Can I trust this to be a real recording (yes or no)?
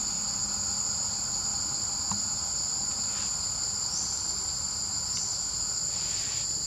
yes